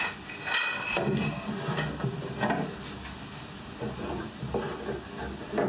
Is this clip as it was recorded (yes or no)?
yes